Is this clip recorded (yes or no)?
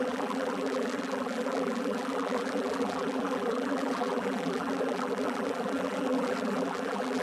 no